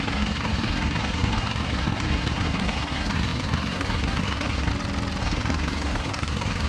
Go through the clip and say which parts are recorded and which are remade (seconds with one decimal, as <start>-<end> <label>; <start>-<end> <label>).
0.0-4.7 remade; 4.7-5.2 recorded; 5.2-6.7 remade